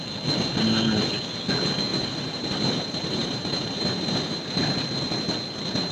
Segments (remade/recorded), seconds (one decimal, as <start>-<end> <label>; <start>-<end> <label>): 0.0-1.9 recorded; 1.9-4.6 remade; 4.6-5.9 recorded